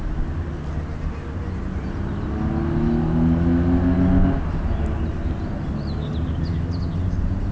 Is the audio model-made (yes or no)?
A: no